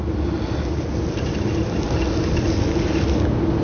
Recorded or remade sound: recorded